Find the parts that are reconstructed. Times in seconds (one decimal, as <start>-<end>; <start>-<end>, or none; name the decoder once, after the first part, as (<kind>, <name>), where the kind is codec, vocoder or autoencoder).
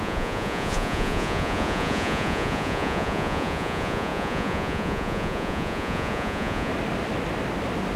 0.0-6.7 (vocoder, Vocos)